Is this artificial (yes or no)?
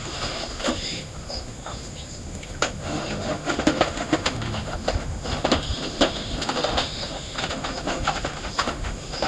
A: yes